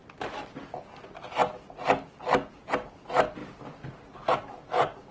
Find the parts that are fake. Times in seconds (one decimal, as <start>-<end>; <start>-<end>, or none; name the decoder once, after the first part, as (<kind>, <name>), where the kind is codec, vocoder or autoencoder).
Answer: none